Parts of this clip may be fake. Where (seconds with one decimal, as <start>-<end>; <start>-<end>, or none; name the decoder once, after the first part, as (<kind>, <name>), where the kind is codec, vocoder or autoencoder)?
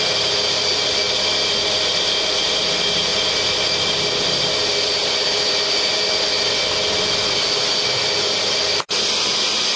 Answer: none